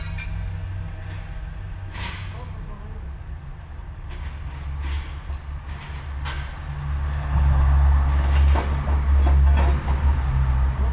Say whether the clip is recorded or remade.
recorded